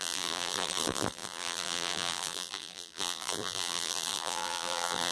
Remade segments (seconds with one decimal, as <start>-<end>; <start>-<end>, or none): 0.0-5.1

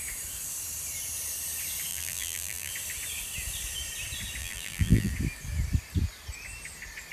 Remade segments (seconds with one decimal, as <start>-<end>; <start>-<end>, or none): 1.9-2.7; 4.4-5.1

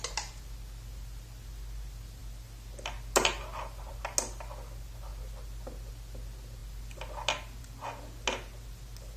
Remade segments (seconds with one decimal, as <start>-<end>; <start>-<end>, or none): none

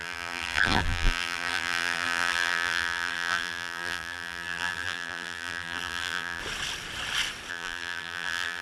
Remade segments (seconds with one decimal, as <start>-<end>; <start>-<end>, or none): 0.0-6.4; 7.5-8.6

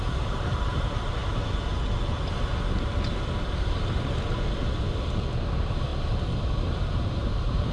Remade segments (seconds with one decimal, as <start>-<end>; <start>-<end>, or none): 0.0-1.2; 5.5-5.9; 6.6-7.7